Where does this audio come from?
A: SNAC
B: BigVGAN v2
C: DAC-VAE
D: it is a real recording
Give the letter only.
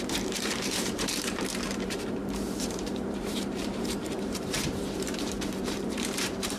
B